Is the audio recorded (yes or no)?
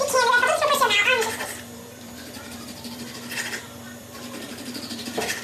no